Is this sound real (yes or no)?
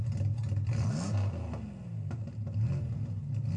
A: yes